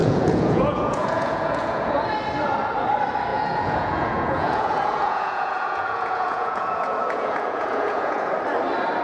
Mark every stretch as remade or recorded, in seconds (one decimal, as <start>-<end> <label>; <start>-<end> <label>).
0.0-1.9 remade; 1.9-3.3 recorded; 3.3-8.3 remade; 8.3-9.0 recorded